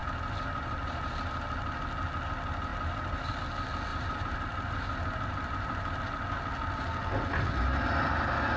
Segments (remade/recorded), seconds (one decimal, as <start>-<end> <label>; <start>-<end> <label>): 0.0-1.1 remade; 1.1-2.7 recorded; 2.7-3.4 remade; 3.4-3.9 recorded; 3.9-6.0 remade; 6.0-8.6 recorded